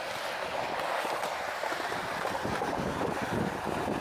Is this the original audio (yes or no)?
yes